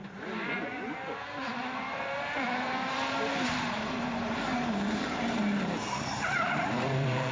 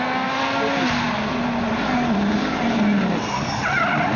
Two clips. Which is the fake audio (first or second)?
first